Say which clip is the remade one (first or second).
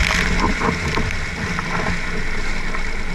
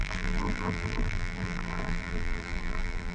second